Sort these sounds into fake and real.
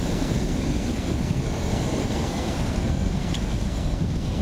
fake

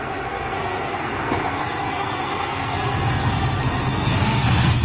fake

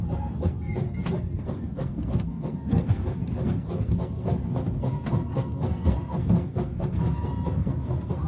fake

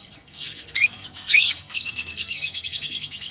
fake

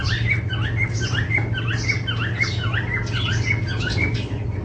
real